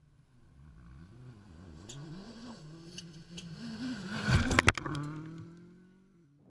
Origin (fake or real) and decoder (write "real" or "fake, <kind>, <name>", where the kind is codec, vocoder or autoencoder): real